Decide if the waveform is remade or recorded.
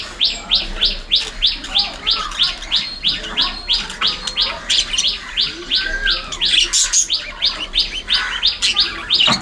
recorded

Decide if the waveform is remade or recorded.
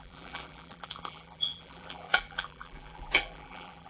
remade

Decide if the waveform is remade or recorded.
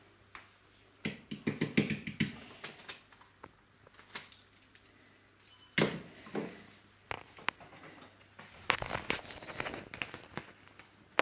recorded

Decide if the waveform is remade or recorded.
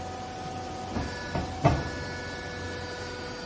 recorded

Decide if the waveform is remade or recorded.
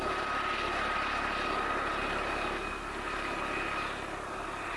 recorded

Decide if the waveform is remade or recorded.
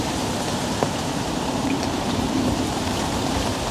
remade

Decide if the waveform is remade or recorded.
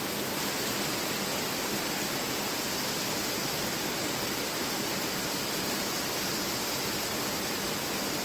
recorded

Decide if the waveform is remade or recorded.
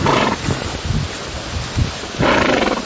recorded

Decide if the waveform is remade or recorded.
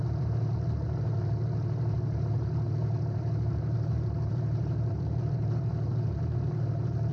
remade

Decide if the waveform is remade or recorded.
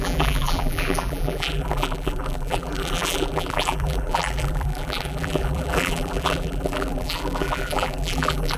remade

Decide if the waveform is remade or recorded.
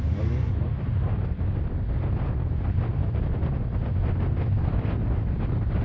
remade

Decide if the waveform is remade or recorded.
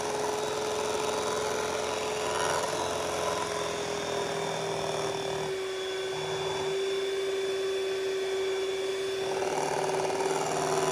recorded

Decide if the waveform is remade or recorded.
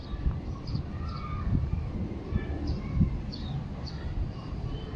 recorded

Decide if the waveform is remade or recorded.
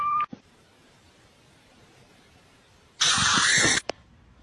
remade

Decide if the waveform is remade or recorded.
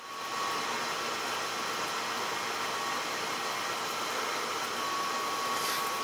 recorded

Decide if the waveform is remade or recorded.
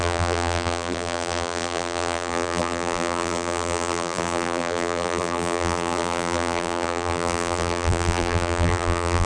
remade